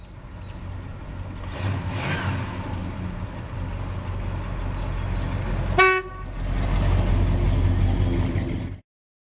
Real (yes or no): yes